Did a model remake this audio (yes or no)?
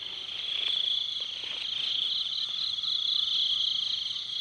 no